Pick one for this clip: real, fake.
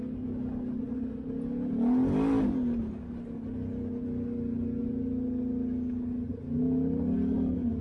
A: real